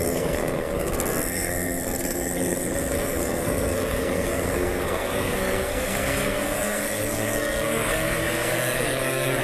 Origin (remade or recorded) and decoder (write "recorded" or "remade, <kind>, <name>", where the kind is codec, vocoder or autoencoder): remade, codec, SNAC